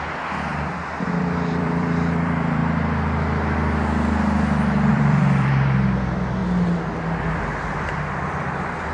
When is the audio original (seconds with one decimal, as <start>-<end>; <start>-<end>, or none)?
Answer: 2.6-4.9; 6.4-7.2